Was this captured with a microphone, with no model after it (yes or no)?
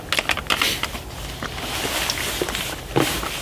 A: yes